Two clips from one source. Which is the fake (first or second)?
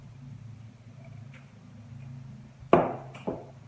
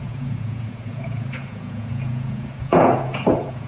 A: second